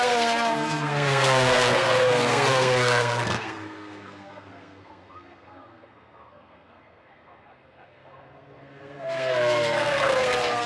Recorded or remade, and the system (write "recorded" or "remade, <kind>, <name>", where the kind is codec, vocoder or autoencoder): remade, codec, SNAC